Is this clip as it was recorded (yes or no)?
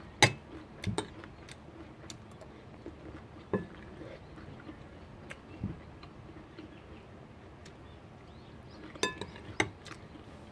yes